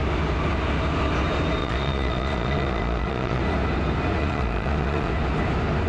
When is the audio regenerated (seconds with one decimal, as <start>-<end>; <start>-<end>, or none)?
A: 1.6-3.4; 4.2-5.1

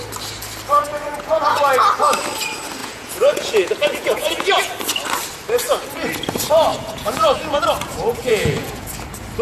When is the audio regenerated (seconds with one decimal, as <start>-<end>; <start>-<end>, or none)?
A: 0.9-1.7; 2.8-4.7; 6.7-7.6; 8.1-8.9

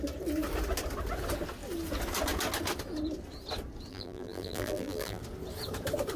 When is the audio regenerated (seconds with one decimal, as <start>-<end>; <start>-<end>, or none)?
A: 3.9-5.2